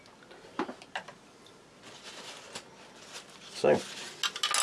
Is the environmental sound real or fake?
real